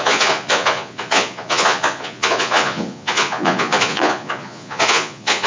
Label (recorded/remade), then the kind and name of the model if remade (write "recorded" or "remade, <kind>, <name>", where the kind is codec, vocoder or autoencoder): remade, vocoder, Vocos